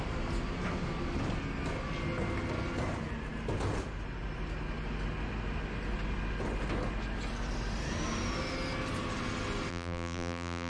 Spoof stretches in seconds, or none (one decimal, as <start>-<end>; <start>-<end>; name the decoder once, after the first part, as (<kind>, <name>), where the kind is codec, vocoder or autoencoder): 9.7-10.7 (vocoder, BigVGAN v2)